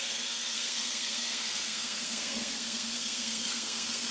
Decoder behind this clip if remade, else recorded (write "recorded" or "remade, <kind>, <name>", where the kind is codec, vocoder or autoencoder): remade, codec, SNAC